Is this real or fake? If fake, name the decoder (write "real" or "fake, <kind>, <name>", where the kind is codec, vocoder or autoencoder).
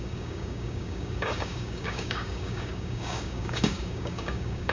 fake, codec, DAC